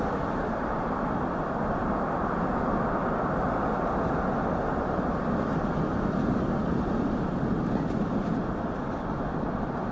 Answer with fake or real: real